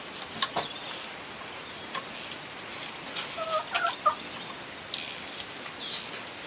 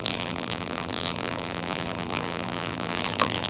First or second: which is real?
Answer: first